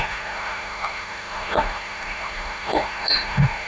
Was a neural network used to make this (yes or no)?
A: yes